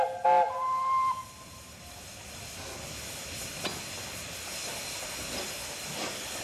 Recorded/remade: recorded